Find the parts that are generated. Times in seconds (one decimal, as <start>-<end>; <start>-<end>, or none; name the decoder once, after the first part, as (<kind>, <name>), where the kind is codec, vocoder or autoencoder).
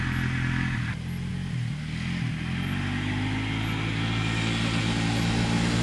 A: none